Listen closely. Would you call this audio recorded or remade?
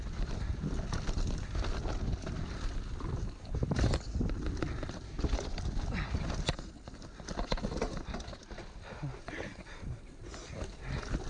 recorded